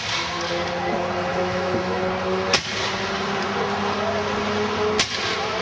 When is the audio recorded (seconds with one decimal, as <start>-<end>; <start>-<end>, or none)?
0.0-1.3; 2.0-5.6